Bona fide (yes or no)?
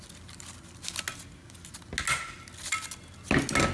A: yes